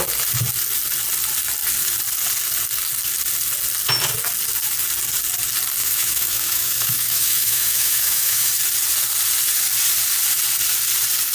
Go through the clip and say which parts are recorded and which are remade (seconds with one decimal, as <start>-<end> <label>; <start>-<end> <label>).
0.0-5.8 recorded; 5.8-8.5 remade; 8.5-11.3 recorded